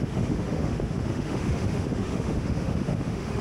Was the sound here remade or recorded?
remade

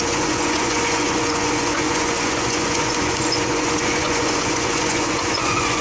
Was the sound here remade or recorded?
remade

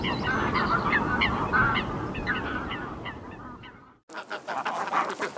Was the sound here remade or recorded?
recorded